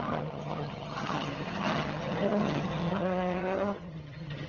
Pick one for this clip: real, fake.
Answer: fake